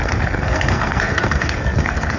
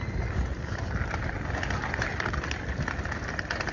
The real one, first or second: second